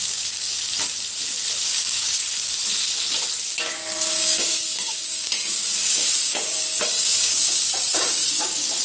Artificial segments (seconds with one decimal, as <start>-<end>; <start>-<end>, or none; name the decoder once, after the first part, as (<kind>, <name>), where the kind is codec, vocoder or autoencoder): 0.0-0.5 (codec, DAC); 1.6-2.6; 3.7-8.8